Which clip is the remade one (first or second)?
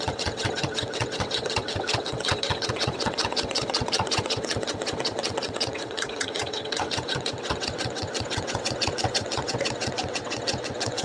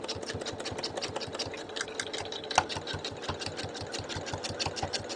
first